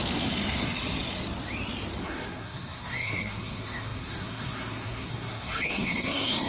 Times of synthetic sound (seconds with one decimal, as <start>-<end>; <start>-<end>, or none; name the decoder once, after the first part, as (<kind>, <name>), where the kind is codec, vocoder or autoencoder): 2.0-6.5 (codec, SNAC)